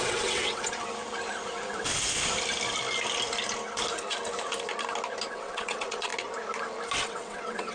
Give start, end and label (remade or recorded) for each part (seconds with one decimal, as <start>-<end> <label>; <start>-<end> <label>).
0.0-0.7 remade; 0.7-5.3 recorded; 5.3-6.1 remade; 6.1-7.0 recorded; 7.0-7.7 remade